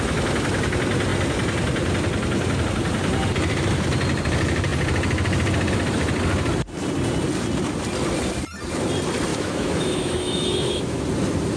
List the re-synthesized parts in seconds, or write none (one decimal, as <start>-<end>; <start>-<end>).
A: 9.3-11.0